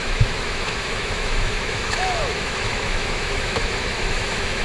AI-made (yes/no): yes